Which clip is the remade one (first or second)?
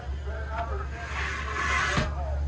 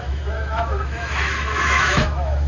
second